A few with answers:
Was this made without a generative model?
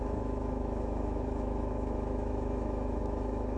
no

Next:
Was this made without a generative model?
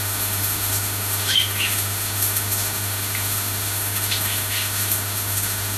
no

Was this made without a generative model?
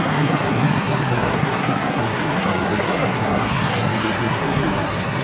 no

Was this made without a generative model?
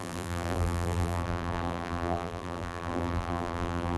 no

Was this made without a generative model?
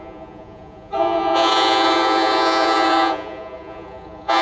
no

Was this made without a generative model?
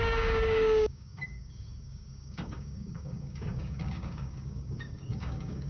no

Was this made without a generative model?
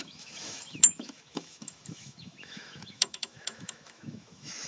no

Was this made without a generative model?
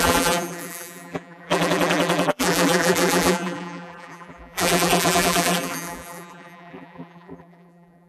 no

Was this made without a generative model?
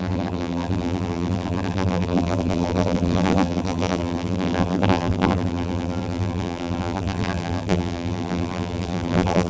no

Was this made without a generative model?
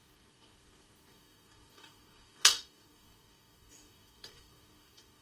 no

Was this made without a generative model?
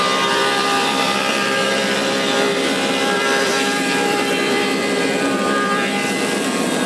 no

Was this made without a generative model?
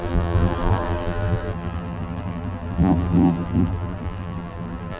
no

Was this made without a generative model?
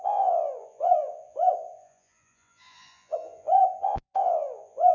no